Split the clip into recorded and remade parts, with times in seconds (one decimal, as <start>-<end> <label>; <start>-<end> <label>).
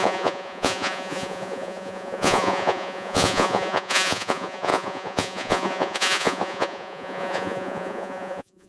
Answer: 0.0-8.7 remade